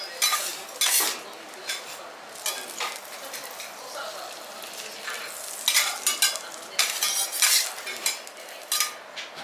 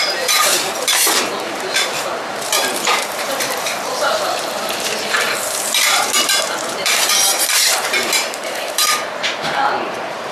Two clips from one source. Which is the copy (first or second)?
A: second